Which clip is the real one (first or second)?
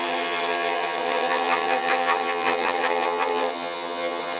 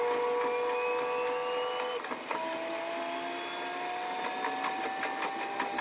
second